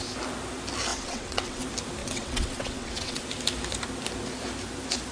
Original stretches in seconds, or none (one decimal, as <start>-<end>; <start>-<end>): 0.0-0.9; 1.6-2.0; 3.2-5.1